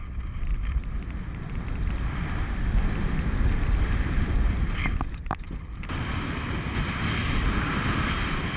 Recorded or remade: remade